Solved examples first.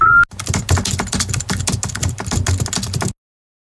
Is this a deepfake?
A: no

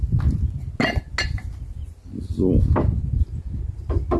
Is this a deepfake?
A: no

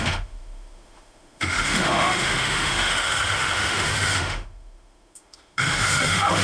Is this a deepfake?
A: yes